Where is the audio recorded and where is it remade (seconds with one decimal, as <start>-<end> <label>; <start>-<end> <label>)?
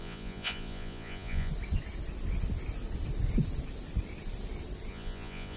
0.0-1.5 remade; 1.5-4.9 recorded; 4.9-5.6 remade